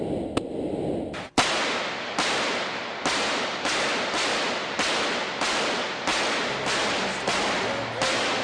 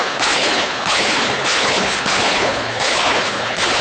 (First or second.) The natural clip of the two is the first